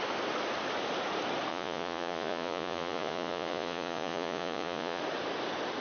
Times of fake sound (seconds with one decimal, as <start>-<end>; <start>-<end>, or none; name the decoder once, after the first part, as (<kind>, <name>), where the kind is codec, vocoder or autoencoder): 1.5-5.0 (vocoder, Vocos)